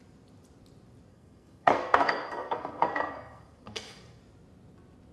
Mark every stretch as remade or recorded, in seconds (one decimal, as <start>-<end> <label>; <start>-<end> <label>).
0.0-1.1 recorded; 1.1-4.2 remade; 4.2-5.1 recorded